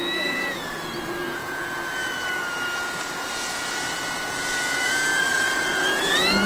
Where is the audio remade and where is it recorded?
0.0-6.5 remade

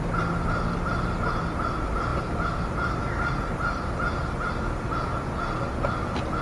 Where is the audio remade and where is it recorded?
0.0-2.1 recorded; 2.1-3.9 remade; 3.9-6.4 recorded

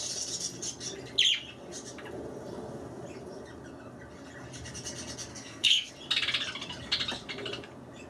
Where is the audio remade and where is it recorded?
0.0-5.3 recorded; 5.3-5.9 remade; 5.9-8.1 recorded

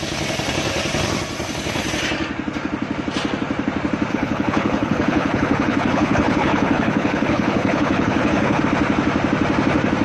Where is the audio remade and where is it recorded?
0.0-4.1 recorded; 4.1-8.6 remade; 8.6-10.0 recorded

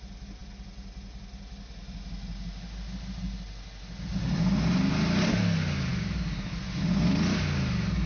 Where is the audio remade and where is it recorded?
0.0-8.1 recorded